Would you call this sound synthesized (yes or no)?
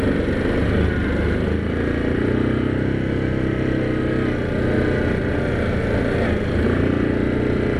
no